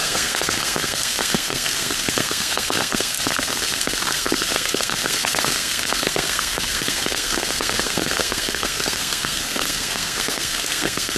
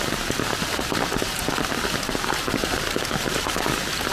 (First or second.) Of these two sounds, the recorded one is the second